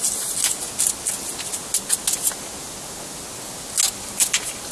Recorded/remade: recorded